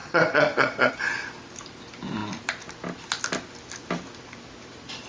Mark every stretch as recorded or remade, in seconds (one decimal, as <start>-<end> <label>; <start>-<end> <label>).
0.0-0.9 remade; 0.9-5.1 recorded